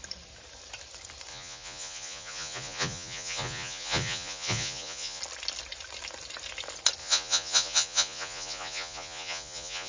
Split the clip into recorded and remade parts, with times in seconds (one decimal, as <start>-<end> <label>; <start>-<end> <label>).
0.0-1.3 recorded; 1.3-5.2 remade; 5.2-7.0 recorded; 7.0-9.9 remade